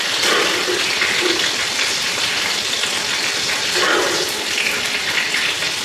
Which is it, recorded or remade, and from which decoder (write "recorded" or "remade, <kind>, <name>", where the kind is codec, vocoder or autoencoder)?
recorded